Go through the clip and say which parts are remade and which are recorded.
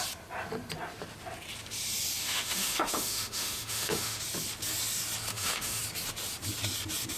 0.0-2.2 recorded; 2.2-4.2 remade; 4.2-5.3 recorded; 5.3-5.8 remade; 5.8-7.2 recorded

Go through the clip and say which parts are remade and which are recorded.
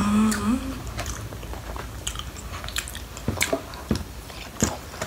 0.0-0.6 remade; 0.6-5.1 recorded